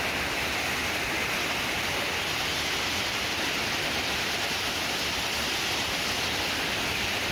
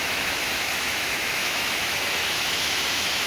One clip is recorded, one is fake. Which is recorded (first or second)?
first